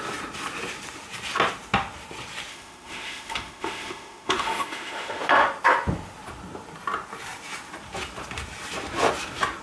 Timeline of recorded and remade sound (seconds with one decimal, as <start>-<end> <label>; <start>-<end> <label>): 0.0-2.5 recorded; 2.5-5.2 remade; 5.2-9.6 recorded